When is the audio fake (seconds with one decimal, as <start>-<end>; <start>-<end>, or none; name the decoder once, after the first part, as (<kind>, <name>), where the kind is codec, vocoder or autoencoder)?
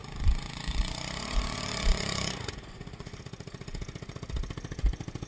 0.0-3.2 (vocoder, Vocos)